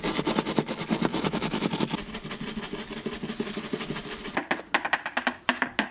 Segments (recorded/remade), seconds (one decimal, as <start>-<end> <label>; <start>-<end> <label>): 0.0-1.1 recorded; 1.1-1.7 remade; 1.7-5.9 recorded